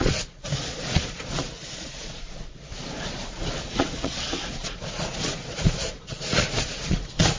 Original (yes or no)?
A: no